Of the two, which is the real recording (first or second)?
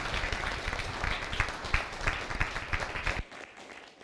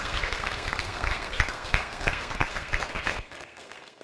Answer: first